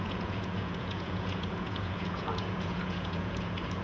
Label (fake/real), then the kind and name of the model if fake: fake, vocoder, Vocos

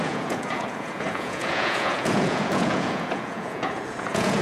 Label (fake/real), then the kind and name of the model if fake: fake, vocoder, Vocos